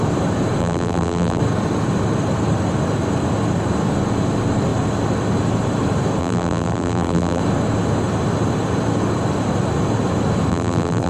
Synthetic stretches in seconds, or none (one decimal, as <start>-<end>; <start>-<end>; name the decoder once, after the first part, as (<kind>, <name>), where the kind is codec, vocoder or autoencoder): 0.6-1.4 (vocoder, BigVGAN v2); 6.2-7.4; 10.5-11.1